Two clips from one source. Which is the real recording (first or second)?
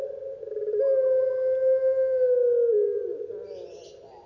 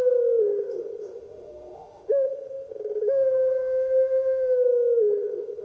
first